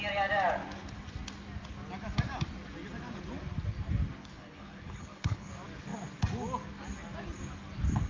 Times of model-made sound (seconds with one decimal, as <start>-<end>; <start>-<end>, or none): 4.2-5.5